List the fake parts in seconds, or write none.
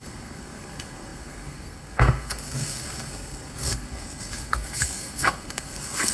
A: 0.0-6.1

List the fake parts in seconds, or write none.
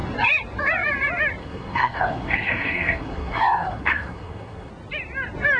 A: 1.4-4.7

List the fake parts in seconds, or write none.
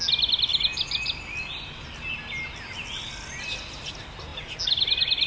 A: none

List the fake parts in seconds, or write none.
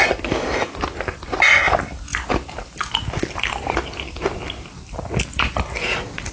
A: none